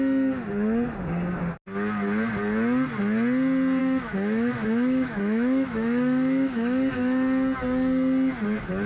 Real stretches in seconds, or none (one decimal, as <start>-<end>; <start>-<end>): 0.0-3.8; 6.9-8.9